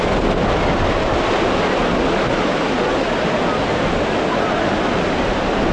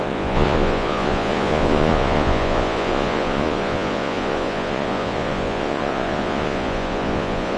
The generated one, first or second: second